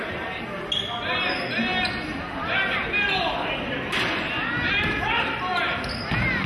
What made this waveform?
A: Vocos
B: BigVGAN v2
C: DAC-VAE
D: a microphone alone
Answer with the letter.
D